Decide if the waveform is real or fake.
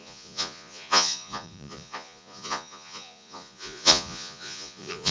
fake